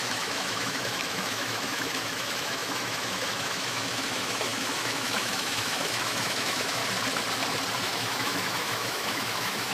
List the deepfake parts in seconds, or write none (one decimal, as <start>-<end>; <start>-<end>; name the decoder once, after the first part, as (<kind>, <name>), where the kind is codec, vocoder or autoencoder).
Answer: 0.0-6.8 (autoencoder, DAC-VAE); 7.8-9.7

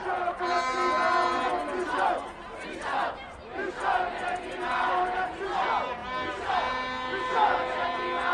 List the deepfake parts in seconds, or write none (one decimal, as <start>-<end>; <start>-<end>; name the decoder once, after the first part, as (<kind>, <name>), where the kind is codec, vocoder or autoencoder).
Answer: none